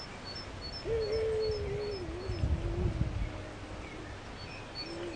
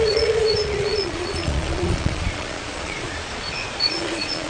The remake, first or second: second